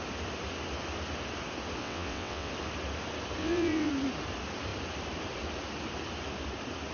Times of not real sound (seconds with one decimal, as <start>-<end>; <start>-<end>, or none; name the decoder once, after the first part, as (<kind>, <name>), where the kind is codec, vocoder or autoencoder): 1.8-2.5 (vocoder, WaveNeXt); 3.4-3.9